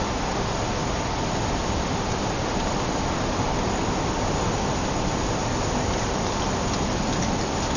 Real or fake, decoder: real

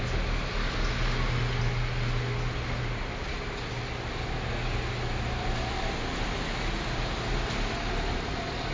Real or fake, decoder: real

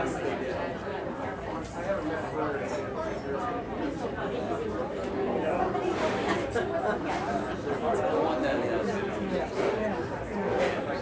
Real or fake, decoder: real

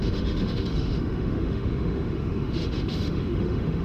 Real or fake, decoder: fake, autoencoder, DAC-VAE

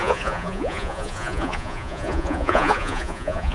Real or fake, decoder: fake, vocoder, Vocos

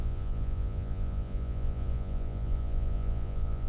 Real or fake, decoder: fake, vocoder, Vocos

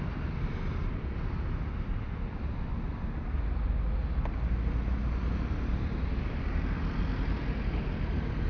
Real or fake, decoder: real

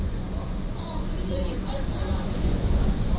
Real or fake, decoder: fake, vocoder, Vocos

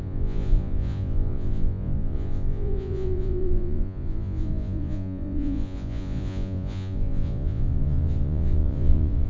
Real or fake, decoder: fake, vocoder, Vocos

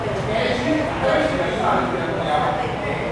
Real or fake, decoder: real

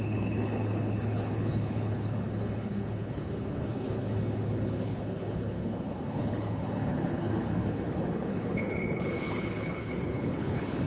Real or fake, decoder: fake, codec, HILCodec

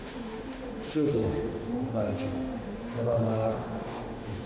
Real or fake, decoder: fake, autoencoder, DAC-VAE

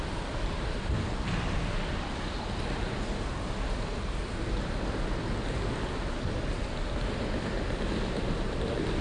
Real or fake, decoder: real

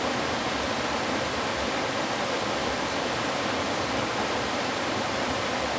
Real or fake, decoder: real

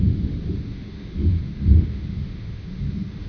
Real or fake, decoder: fake, autoencoder, DAC-VAE